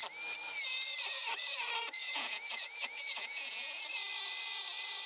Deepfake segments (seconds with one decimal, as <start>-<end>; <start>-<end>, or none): 2.0-3.8